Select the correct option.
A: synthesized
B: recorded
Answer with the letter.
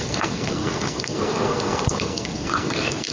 A